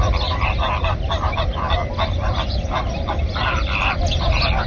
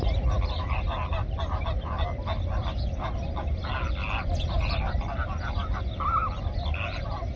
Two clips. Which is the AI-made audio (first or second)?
first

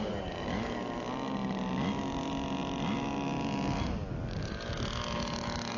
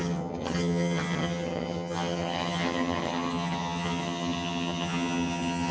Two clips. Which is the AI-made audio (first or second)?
second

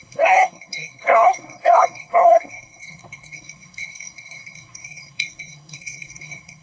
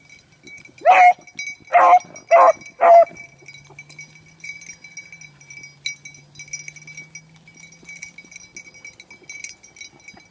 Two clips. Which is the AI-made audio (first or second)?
first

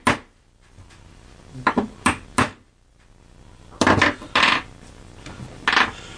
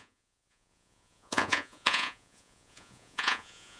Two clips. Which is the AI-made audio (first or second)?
second